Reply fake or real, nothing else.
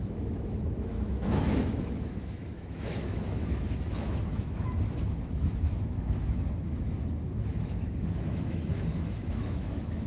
fake